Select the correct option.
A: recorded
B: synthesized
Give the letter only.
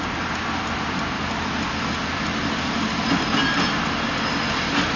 A